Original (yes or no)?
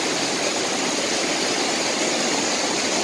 yes